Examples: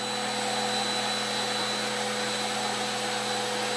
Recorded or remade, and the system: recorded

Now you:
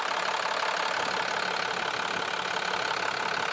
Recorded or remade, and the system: recorded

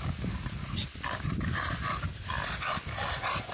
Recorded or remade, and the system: recorded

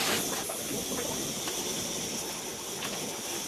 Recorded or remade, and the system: recorded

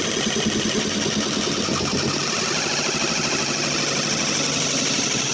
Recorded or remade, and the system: recorded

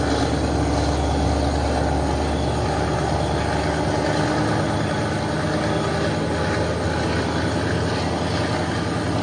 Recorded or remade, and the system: recorded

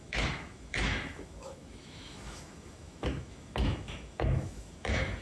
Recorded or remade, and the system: remade, autoencoder, DAC-VAE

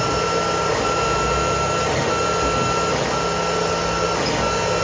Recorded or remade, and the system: recorded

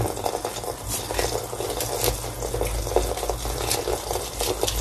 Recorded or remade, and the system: recorded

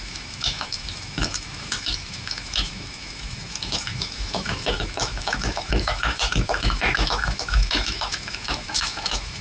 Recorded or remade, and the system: remade, autoencoder, DAC-VAE